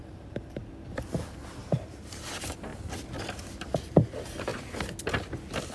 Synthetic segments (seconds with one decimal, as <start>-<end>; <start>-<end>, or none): 0.0-0.6; 1.6-2.3